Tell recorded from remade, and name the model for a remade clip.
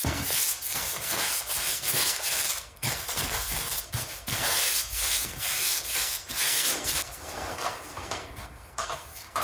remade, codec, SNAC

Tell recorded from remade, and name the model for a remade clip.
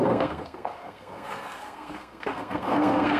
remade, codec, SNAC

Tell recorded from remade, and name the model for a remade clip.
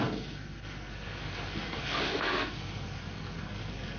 remade, codec, SNAC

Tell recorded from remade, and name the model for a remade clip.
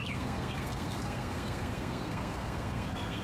remade, codec, SNAC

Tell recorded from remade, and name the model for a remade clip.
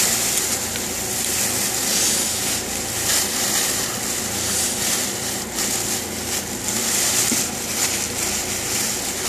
recorded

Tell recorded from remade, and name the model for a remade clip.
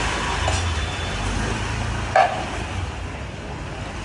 recorded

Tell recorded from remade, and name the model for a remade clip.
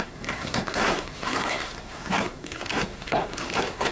remade, codec, SNAC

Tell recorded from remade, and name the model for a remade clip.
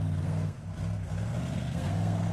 remade, codec, SNAC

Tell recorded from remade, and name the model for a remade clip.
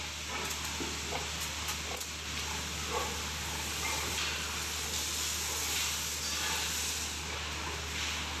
recorded